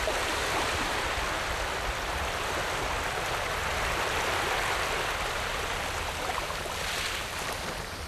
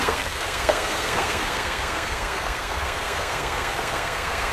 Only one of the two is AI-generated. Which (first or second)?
second